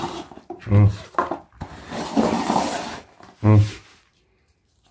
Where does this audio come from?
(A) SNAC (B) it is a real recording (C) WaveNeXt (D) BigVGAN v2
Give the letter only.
B